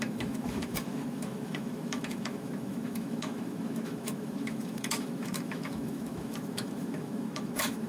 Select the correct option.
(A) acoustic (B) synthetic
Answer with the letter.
B